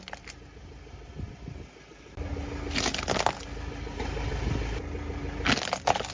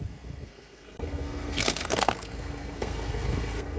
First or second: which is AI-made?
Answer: second